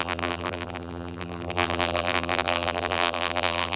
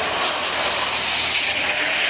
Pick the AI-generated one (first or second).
first